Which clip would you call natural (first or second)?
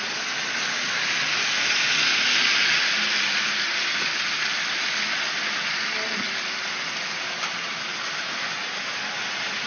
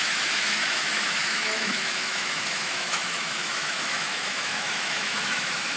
first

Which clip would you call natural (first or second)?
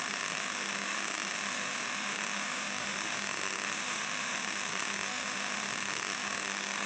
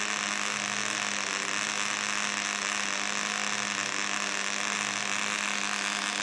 second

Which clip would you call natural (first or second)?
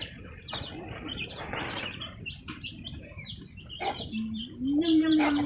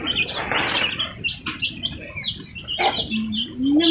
second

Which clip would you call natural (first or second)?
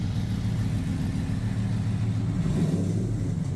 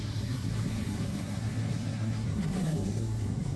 first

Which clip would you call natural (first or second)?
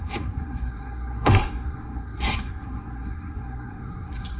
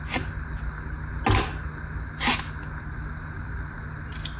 second